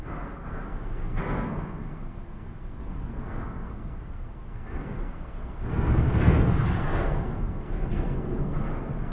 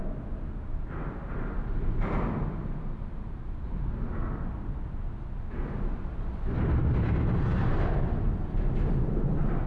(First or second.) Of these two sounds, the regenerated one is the first